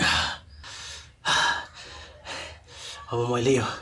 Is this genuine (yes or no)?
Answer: yes